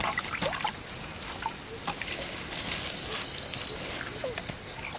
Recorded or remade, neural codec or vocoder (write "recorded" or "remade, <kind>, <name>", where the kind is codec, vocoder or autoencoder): recorded